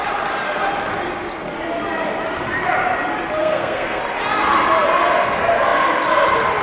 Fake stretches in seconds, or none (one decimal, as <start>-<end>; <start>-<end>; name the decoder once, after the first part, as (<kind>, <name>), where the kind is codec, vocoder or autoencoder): 3.4-4.0 (codec, SNAC)

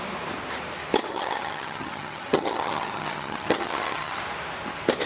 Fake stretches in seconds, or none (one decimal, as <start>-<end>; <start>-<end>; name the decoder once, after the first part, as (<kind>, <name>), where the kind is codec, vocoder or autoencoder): 1.1-4.2 (vocoder, HiFi-GAN)

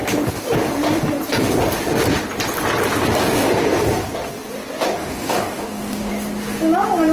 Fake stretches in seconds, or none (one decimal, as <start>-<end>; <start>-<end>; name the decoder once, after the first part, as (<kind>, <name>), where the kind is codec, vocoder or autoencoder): 5.0-6.1 (codec, DAC)